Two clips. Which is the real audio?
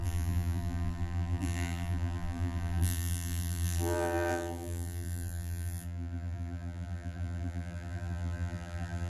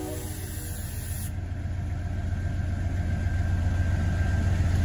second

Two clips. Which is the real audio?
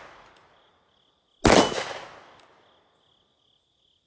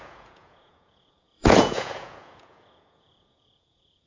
first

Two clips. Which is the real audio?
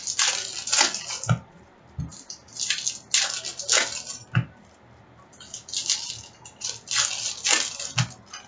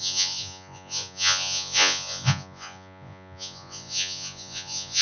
first